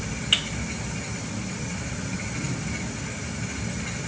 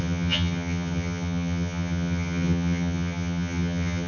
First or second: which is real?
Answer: first